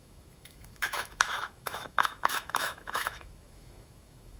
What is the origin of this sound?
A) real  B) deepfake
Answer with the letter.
B